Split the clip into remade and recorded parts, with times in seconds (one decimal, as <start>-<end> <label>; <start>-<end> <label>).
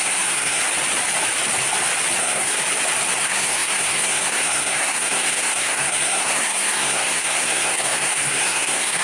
0.0-0.6 remade; 0.6-2.2 recorded; 2.2-2.6 remade; 2.6-3.2 recorded; 3.2-9.0 remade